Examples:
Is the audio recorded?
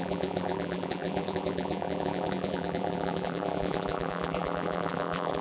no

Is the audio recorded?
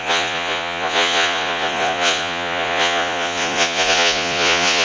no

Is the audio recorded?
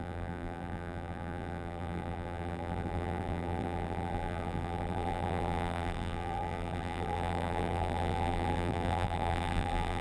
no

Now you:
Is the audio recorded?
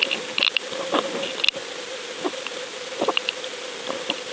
yes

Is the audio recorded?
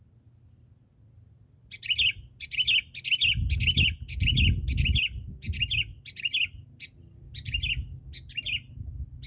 yes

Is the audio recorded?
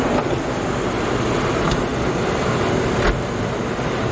yes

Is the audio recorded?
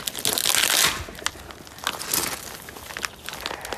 yes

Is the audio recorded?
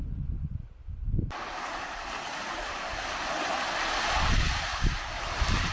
yes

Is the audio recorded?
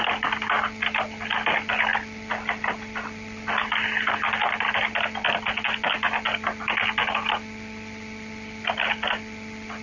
yes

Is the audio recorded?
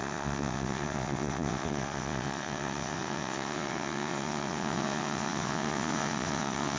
no